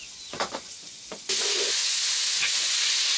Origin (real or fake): fake